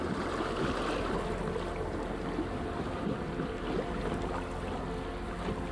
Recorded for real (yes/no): yes